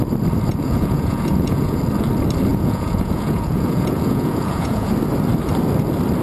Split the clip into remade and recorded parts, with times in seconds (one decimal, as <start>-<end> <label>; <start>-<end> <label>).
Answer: 0.0-0.5 recorded; 0.5-1.8 remade; 1.8-2.5 recorded; 2.5-4.9 remade; 4.9-6.2 recorded